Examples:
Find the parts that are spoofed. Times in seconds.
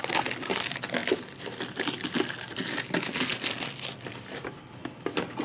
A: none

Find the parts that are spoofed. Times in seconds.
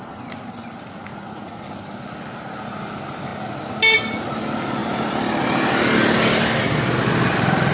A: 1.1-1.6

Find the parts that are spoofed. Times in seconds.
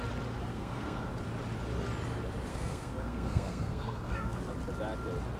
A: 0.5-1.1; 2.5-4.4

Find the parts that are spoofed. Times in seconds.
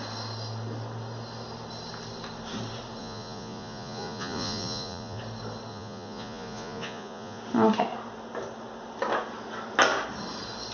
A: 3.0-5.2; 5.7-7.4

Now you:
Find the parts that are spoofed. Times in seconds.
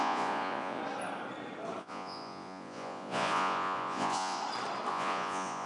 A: 0.0-0.8; 1.8-4.4; 4.9-5.7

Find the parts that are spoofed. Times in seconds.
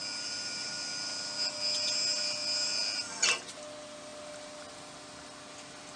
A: none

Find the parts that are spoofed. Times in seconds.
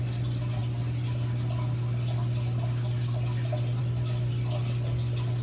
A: none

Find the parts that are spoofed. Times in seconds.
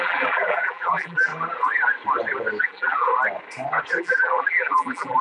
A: 0.0-1.3; 2.6-3.1; 4.0-5.2